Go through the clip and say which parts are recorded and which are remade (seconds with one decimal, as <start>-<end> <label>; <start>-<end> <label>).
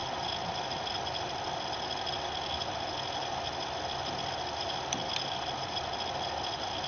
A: 0.0-6.9 recorded